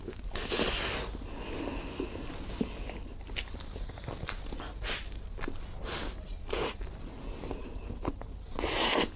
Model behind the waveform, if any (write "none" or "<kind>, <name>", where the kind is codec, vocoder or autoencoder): none